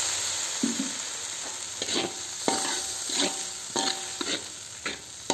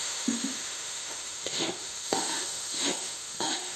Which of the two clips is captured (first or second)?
first